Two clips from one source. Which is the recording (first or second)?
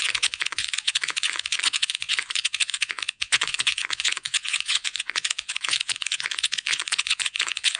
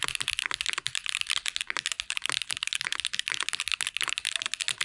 second